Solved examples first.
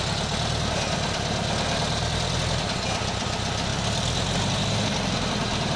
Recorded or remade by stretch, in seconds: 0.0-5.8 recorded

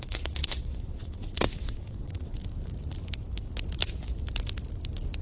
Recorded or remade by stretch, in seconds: 0.0-2.4 remade; 2.4-5.2 recorded

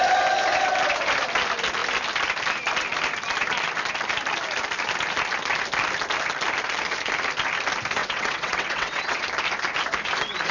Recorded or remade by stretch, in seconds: 0.0-8.0 recorded; 8.0-9.2 remade; 9.2-10.5 recorded

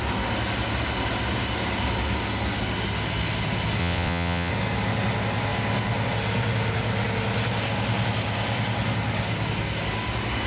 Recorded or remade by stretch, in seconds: 0.0-3.8 recorded; 3.8-4.5 remade; 4.5-10.5 recorded

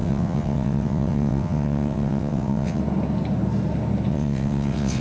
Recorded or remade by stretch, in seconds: 0.0-2.8 remade; 2.8-4.1 recorded; 4.1-5.0 remade

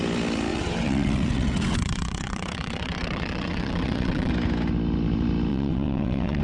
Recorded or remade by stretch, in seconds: 0.0-0.5 recorded; 0.5-4.3 remade; 4.3-5.5 recorded; 5.5-6.4 remade

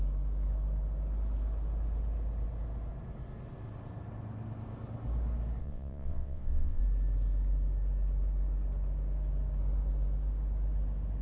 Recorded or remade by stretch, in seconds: 0.0-5.6 recorded; 5.6-6.8 remade; 6.8-11.2 recorded

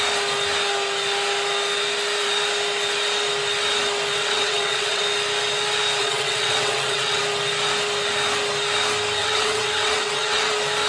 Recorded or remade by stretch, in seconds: 0.0-4.2 recorded; 4.2-5.0 remade; 5.0-6.0 recorded; 6.0-7.2 remade; 7.2-9.2 recorded; 9.2-10.5 remade; 10.5-10.9 recorded